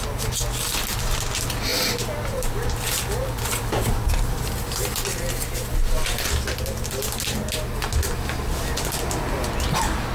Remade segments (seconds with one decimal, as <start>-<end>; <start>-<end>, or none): none